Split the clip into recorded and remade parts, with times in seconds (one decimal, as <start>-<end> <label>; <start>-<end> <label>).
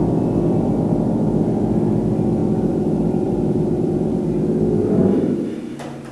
0.0-2.4 recorded; 2.4-4.4 remade; 4.4-5.0 recorded; 5.0-6.1 remade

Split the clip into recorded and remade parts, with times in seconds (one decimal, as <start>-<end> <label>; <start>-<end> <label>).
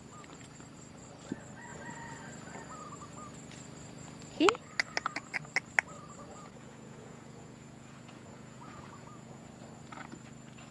0.0-6.3 recorded; 6.3-9.5 remade; 9.5-10.7 recorded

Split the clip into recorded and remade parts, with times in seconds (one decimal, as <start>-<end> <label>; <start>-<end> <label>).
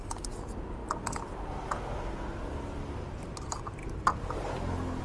0.0-5.0 recorded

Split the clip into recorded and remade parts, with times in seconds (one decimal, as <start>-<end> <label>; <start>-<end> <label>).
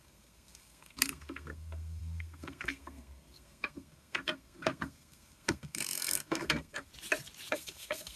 0.0-6.9 remade; 6.9-7.5 recorded; 7.5-8.2 remade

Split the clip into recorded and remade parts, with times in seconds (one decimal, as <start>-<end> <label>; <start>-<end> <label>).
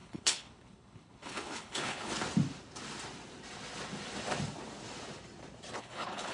0.0-2.1 remade; 2.1-5.8 recorded; 5.8-6.3 remade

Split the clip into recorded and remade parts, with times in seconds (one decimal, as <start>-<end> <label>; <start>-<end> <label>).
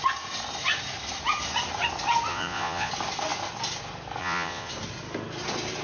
0.0-2.3 recorded; 2.3-2.9 remade; 2.9-4.2 recorded; 4.2-4.7 remade; 4.7-5.8 recorded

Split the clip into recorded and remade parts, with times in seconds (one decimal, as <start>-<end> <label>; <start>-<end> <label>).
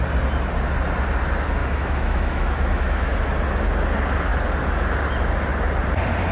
0.0-1.6 recorded; 1.6-3.1 remade; 3.1-6.3 recorded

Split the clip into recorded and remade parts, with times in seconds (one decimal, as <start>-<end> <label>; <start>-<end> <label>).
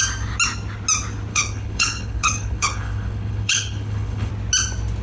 0.0-1.3 recorded; 1.3-4.3 remade; 4.3-5.0 recorded